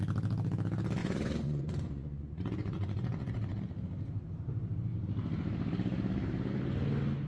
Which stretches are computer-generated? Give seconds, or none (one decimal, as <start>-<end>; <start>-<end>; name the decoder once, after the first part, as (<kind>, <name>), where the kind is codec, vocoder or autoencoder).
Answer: 1.0-3.6 (vocoder, Vocos)